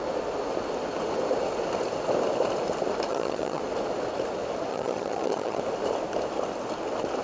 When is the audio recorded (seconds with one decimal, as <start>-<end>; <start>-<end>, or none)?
0.0-3.1; 3.6-4.7; 5.6-7.2

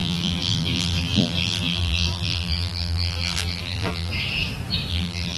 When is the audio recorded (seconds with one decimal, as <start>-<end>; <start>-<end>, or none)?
4.1-4.9